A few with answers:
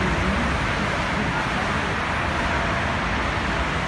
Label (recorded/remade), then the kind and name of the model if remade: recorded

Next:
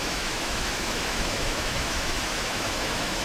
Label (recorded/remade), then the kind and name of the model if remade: remade, autoencoder, DAC-VAE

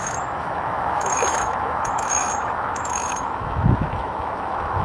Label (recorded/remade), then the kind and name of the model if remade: remade, autoencoder, DAC-VAE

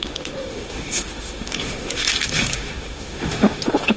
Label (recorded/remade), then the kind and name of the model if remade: remade, autoencoder, DAC-VAE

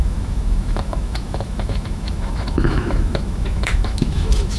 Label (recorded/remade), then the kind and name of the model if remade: remade, autoencoder, DAC-VAE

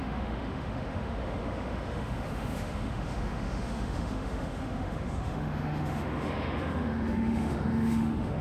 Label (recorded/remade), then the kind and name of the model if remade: remade, autoencoder, DAC-VAE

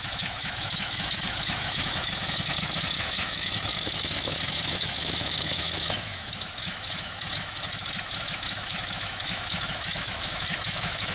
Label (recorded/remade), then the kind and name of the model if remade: remade, autoencoder, DAC-VAE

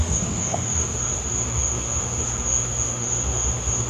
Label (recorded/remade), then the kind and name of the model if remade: remade, autoencoder, DAC-VAE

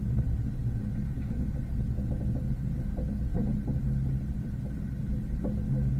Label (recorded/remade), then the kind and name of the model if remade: recorded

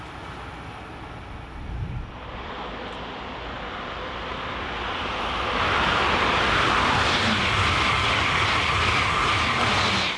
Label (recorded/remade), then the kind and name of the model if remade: recorded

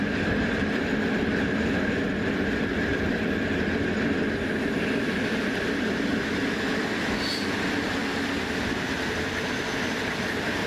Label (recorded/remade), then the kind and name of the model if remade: recorded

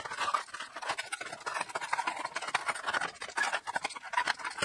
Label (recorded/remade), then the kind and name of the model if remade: recorded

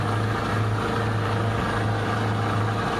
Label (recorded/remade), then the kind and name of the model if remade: recorded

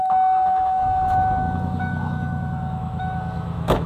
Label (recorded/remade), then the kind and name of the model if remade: remade, autoencoder, DAC-VAE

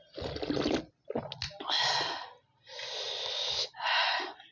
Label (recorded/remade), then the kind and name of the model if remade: recorded